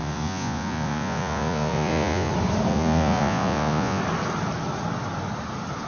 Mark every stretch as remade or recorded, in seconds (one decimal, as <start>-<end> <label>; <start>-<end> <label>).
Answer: 0.0-2.3 remade; 2.3-2.7 recorded; 2.7-4.0 remade; 4.0-5.9 recorded